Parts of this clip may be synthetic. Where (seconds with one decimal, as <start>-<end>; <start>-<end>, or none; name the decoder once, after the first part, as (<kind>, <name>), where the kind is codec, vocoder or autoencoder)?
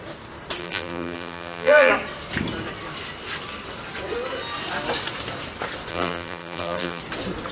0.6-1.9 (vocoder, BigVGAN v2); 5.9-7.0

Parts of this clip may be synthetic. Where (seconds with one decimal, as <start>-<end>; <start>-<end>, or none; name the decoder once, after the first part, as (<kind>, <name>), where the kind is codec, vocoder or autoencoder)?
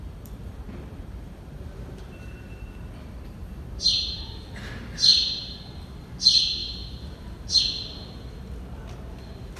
0.0-4.6 (vocoder, BigVGAN v2); 5.1-5.6; 6.6-7.6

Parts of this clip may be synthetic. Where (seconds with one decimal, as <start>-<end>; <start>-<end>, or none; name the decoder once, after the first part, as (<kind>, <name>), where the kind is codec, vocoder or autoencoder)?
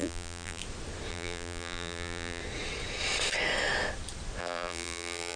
0.0-0.6 (vocoder, BigVGAN v2); 1.1-2.4; 4.4-5.4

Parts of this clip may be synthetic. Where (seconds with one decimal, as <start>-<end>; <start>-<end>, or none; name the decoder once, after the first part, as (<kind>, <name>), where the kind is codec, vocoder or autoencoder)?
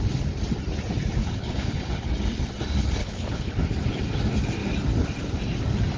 1.2-2.1 (codec, HILCodec); 3.0-3.5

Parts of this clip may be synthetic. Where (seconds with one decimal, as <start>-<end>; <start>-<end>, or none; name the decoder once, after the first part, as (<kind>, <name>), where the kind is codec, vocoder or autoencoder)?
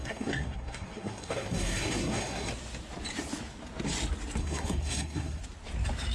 0.0-2.5 (codec, SNAC); 4.4-5.4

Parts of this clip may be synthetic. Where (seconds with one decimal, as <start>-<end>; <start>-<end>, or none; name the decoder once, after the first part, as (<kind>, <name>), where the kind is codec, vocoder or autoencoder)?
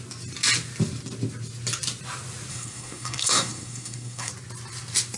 2.5-4.3 (codec, SNAC)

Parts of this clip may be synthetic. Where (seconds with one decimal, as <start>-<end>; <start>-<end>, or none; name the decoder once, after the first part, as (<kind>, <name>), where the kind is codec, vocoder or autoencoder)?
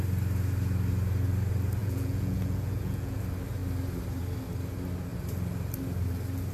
1.8-3.2 (vocoder, Vocos)